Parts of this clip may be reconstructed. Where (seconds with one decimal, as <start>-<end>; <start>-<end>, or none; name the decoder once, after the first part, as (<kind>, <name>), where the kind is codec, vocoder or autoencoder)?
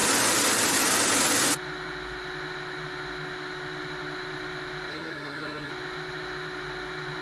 4.9-5.7 (codec, SNAC)